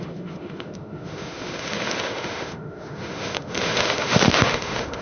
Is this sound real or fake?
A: fake